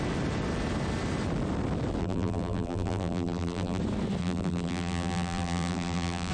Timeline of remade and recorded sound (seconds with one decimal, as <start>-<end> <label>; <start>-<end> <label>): 0.0-2.0 recorded; 2.0-3.8 remade; 3.8-4.2 recorded; 4.2-6.3 remade